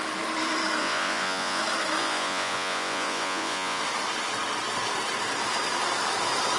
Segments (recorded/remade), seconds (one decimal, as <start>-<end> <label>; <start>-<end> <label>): 0.0-0.8 recorded; 0.8-1.6 remade; 1.6-2.0 recorded; 2.0-3.8 remade; 3.8-6.6 recorded